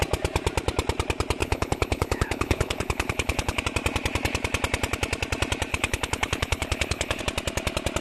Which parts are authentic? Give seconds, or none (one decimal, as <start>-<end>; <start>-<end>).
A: 0.0-1.4; 3.6-5.7; 7.2-8.0